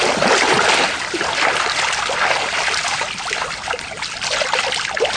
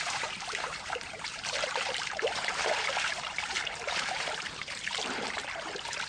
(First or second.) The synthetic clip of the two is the second